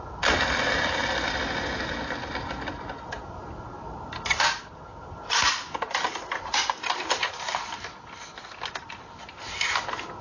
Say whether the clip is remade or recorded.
recorded